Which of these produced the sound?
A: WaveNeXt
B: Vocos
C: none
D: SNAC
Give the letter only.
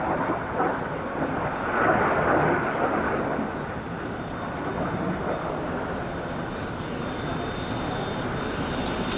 C